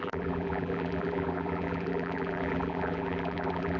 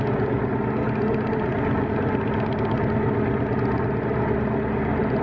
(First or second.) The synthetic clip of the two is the first